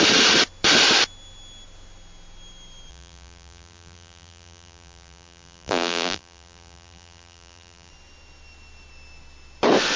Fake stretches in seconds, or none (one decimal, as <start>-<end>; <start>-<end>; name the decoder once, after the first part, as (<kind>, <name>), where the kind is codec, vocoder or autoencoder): 2.9-7.9 (vocoder, BigVGAN v2)